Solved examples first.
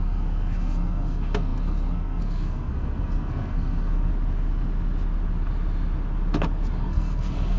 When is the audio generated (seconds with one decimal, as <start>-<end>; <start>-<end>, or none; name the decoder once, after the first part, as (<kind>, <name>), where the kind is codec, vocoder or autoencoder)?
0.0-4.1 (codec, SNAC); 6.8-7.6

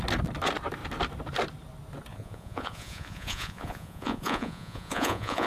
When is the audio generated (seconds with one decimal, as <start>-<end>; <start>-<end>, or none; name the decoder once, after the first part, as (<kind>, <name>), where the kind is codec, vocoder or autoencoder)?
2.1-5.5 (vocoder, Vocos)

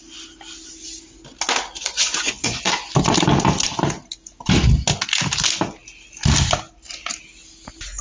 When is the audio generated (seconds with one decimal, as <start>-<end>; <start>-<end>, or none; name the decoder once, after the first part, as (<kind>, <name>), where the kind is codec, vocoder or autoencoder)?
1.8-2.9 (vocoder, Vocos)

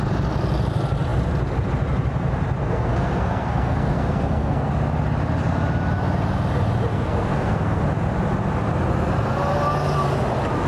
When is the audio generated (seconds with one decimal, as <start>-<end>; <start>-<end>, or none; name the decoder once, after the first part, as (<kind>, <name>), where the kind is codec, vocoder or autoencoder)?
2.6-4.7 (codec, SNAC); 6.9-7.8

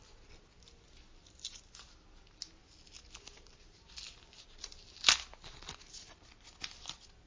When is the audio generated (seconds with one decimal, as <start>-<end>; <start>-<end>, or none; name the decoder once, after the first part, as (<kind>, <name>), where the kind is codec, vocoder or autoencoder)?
none